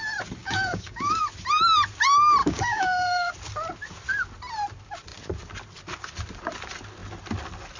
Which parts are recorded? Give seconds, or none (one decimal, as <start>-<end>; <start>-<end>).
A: 0.0-0.4; 1.2-2.4; 3.3-7.8